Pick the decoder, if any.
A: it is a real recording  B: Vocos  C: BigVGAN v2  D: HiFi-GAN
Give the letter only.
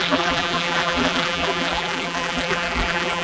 C